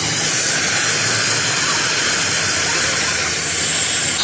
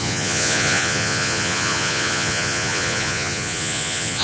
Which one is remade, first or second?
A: second